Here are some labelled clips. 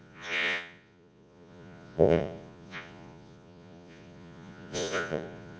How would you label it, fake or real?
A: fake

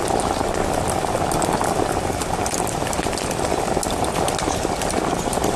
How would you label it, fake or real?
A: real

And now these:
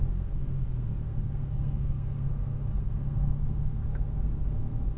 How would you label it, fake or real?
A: fake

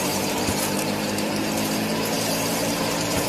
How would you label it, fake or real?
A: fake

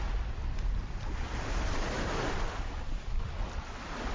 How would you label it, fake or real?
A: real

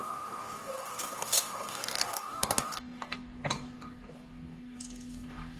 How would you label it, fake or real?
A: fake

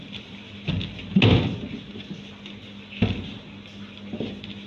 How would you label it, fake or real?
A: real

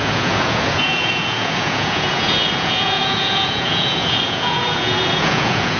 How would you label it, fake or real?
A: fake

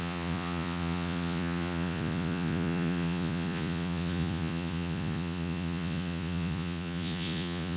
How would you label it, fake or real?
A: fake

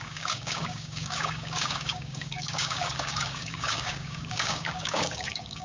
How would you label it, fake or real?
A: fake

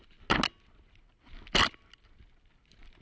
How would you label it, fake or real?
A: real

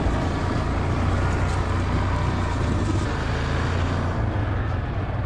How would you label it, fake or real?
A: real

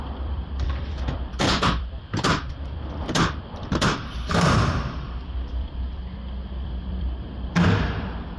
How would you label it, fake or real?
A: fake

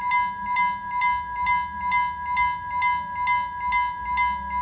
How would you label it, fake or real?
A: real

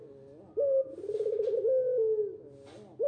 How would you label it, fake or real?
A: real